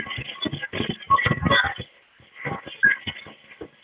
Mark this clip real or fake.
real